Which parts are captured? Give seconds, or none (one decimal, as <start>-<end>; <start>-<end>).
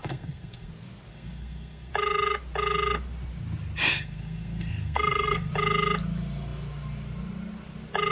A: 0.7-1.1; 1.9-3.9; 5.5-8.1